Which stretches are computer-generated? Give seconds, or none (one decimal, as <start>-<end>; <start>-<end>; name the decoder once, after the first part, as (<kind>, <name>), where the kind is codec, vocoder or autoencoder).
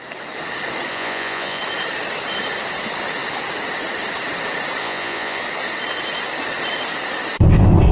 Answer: 0.9-1.6 (vocoder, Vocos); 4.8-5.4